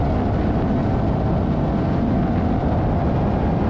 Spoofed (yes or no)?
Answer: no